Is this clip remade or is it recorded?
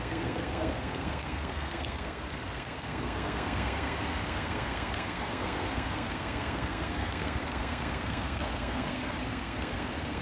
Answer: remade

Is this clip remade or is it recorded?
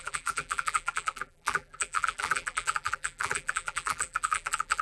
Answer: remade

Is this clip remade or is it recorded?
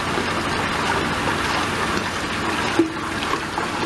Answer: recorded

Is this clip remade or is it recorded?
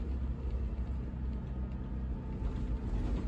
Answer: recorded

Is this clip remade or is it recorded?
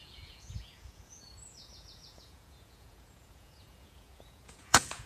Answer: remade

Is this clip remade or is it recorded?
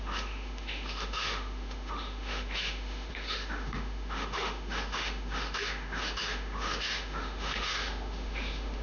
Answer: remade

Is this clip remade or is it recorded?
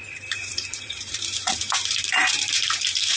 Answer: remade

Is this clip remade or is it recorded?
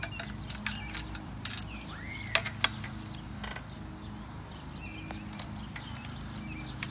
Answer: recorded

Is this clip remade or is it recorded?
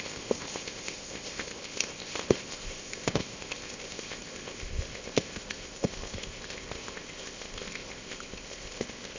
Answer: remade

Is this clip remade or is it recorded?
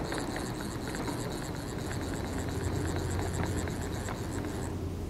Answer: recorded